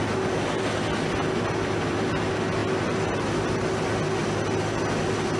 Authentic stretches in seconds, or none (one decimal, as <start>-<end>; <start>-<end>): 0.0-2.6; 3.3-5.4